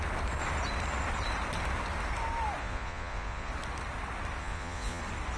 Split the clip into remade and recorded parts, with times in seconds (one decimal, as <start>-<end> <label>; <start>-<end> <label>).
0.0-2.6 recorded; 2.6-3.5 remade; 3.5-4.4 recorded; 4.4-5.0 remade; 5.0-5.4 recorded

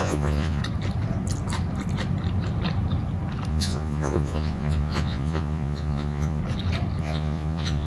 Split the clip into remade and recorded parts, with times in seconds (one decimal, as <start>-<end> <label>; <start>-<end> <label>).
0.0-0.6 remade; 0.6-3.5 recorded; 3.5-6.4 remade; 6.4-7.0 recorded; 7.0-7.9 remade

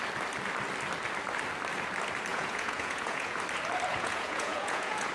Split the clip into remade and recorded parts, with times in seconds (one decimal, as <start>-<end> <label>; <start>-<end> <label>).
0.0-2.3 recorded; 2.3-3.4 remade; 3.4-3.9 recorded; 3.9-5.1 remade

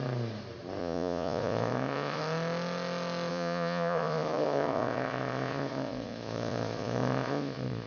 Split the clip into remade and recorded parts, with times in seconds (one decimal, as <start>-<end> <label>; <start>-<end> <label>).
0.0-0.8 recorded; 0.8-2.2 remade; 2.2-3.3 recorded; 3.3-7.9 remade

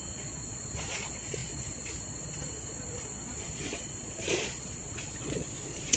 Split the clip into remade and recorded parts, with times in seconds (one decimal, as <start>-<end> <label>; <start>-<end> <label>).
0.0-6.0 remade